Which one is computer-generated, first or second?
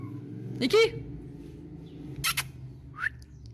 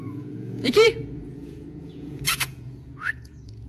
second